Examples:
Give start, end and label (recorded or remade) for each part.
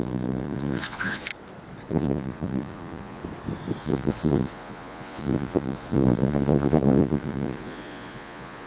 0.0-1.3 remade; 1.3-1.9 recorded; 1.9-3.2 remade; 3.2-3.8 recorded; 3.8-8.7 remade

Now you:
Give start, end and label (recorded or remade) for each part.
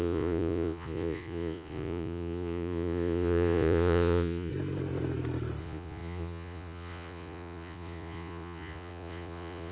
0.0-4.5 remade; 4.5-5.6 recorded; 5.6-9.7 remade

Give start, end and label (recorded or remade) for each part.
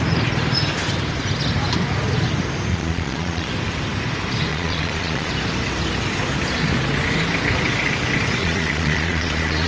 0.0-2.7 recorded; 2.7-3.5 remade; 3.5-4.5 recorded; 4.5-5.3 remade; 5.3-8.4 recorded; 8.4-9.7 remade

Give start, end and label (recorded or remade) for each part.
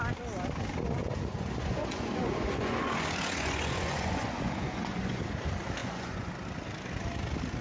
0.0-1.0 recorded; 1.0-5.2 remade; 5.2-5.8 recorded; 5.8-6.3 remade; 6.3-7.6 recorded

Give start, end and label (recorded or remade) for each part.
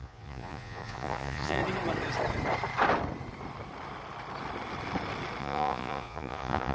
0.0-1.6 remade; 1.6-5.4 recorded; 5.4-6.7 remade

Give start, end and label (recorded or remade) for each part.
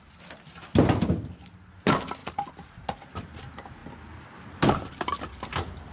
0.0-2.2 recorded; 2.2-3.1 remade; 3.1-5.9 recorded